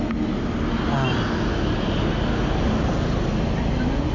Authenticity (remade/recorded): recorded